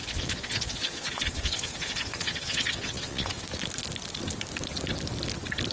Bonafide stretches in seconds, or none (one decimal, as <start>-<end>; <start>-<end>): 3.4-5.7

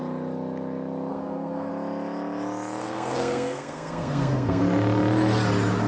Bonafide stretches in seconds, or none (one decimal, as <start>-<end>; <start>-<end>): 0.0-1.1; 1.7-2.8; 4.6-5.9

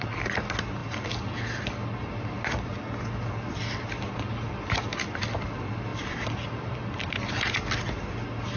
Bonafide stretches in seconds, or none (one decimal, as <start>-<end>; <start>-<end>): 0.0-5.9; 7.5-8.6

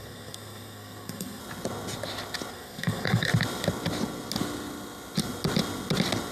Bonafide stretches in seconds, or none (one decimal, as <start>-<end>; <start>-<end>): 1.4-2.5; 3.3-6.3

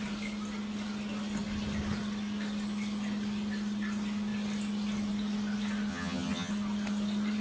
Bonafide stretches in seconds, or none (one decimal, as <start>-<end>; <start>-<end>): 0.0-5.9; 6.5-7.4